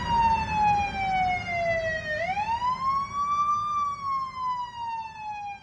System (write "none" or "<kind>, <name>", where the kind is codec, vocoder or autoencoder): none